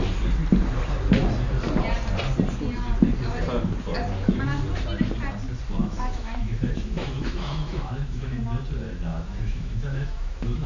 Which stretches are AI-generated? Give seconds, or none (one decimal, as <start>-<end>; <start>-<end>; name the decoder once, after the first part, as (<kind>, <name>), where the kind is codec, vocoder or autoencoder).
5.8-8.4 (autoencoder, DAC-VAE); 9.1-10.7